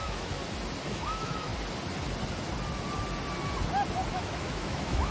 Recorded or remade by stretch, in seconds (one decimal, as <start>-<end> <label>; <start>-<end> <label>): 0.0-0.4 remade; 0.4-0.9 recorded; 0.9-1.5 remade; 1.5-4.1 recorded; 4.1-5.1 remade